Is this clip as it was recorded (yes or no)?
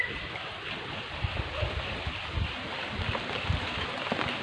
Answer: yes